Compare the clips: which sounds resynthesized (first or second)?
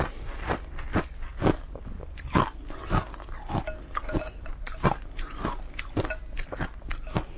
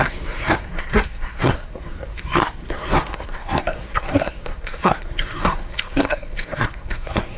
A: second